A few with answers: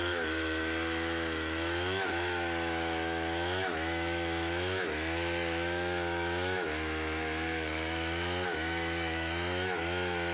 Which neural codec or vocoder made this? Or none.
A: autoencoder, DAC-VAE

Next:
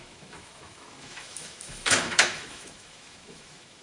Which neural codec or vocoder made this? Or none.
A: autoencoder, DAC-VAE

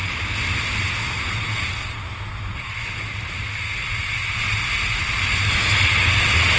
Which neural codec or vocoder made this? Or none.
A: none